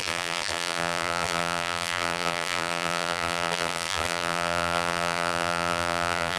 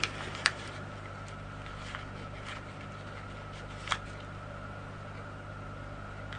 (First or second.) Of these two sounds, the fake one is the first